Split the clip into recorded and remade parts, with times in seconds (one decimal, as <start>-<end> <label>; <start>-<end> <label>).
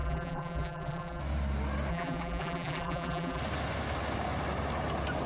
0.0-1.2 remade; 1.2-1.9 recorded; 1.9-3.4 remade; 3.4-5.3 recorded